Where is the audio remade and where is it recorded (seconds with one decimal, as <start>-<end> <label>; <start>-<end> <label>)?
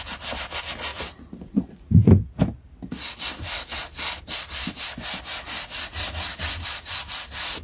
0.0-0.9 recorded; 0.9-2.4 remade; 2.4-7.6 recorded